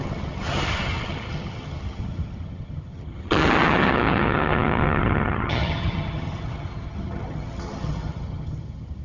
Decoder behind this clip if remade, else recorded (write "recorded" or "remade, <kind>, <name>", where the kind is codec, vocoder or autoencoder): remade, vocoder, HiFi-GAN